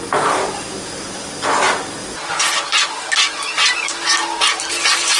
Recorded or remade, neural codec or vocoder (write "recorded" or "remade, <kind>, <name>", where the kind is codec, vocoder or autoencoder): recorded